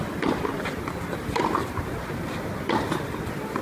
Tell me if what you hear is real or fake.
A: real